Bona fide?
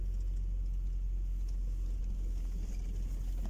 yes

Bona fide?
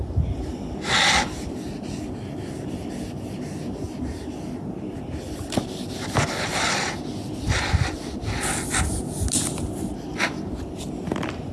yes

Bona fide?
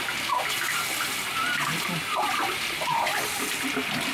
yes